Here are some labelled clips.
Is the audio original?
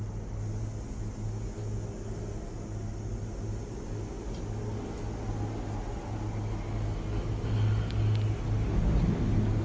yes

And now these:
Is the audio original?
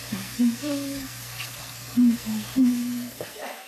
no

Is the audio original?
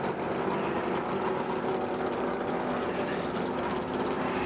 yes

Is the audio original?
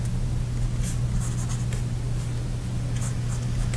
yes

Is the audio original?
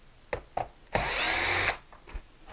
yes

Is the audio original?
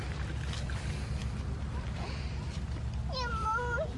yes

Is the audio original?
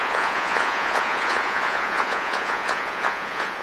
no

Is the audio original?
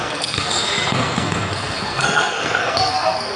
no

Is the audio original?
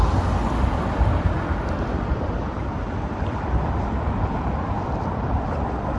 no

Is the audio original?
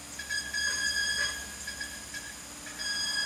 yes